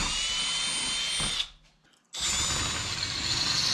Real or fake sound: real